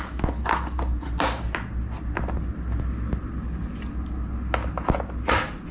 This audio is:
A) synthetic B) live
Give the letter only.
B